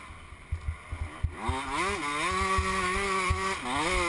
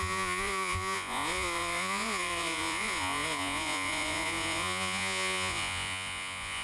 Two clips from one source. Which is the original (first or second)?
first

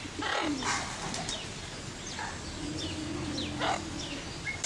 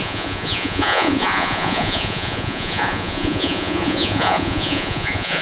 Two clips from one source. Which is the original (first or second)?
first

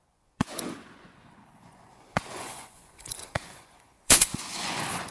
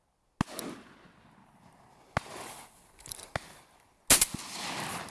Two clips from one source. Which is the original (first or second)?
second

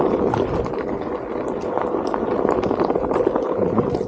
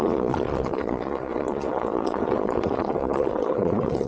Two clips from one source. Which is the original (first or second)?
first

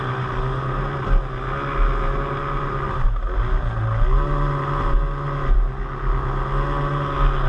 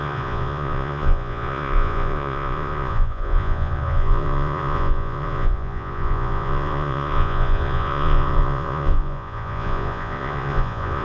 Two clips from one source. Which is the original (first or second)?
first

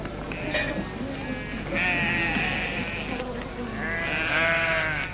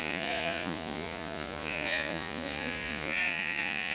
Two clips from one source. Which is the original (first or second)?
first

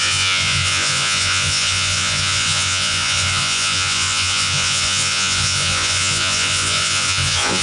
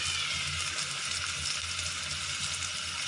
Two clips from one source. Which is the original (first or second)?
second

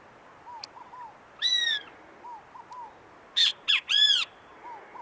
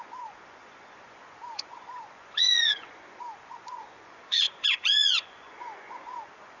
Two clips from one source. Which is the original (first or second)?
first